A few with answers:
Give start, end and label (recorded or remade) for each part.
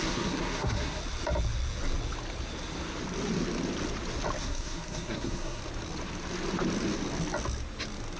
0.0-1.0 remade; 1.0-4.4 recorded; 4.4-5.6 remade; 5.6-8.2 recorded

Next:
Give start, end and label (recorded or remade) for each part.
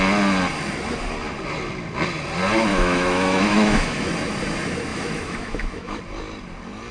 0.0-2.7 recorded; 2.7-4.1 remade; 4.1-4.9 recorded; 4.9-6.0 remade; 6.0-6.9 recorded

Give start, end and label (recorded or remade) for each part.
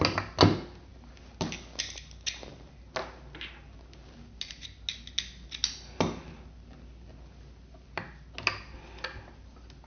0.0-9.9 recorded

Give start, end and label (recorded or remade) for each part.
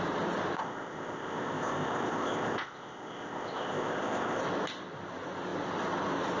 0.0-0.6 recorded; 0.6-4.4 remade; 4.4-6.4 recorded